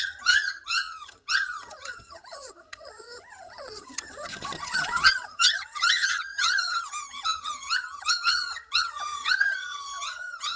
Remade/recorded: remade